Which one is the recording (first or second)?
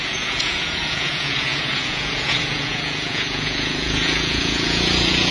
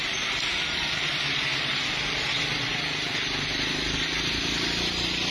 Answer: second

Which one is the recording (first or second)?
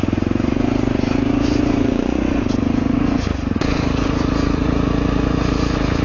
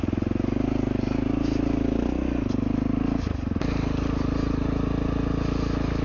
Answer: second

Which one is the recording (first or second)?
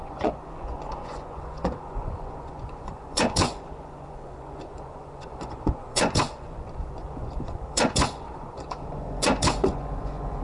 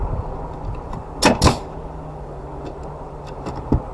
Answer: second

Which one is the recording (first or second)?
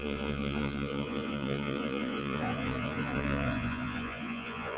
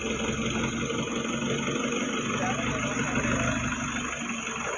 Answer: second